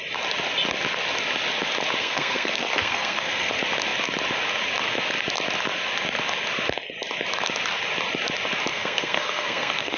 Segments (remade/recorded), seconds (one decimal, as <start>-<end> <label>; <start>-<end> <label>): 0.0-2.0 recorded; 2.0-3.5 remade; 3.5-8.7 recorded; 8.7-10.0 remade

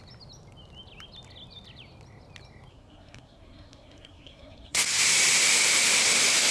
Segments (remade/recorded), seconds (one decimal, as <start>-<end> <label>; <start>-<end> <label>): 0.0-2.7 recorded; 2.7-4.9 remade; 4.9-6.5 recorded